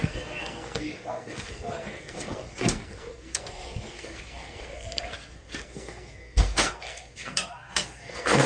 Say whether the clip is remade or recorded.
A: remade